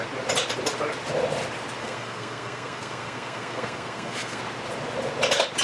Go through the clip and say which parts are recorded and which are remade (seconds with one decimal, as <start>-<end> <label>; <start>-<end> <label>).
0.0-1.8 recorded; 1.8-4.4 remade; 4.4-5.6 recorded